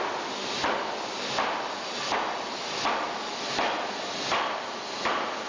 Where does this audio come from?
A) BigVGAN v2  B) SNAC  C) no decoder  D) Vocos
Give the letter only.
C